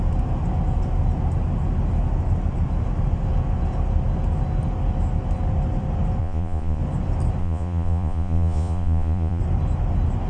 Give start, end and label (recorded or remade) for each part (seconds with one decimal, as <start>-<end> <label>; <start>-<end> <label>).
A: 0.0-6.2 recorded; 6.2-6.8 remade; 6.8-7.4 recorded; 7.4-9.4 remade; 9.4-10.3 recorded